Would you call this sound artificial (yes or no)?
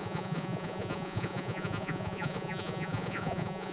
yes